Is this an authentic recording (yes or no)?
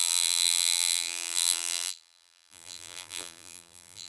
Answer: no